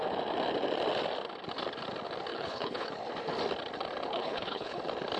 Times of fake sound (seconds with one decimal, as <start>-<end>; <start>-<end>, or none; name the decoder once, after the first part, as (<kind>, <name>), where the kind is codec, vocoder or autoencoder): 2.3-2.9 (codec, HILCodec); 4.1-4.8